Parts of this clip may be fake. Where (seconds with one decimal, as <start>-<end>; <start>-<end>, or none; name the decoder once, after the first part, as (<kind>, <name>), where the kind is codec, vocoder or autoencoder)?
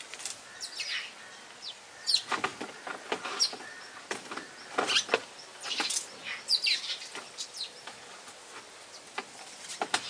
none